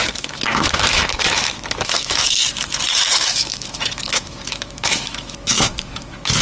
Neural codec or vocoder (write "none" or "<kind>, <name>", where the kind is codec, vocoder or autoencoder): autoencoder, DAC-VAE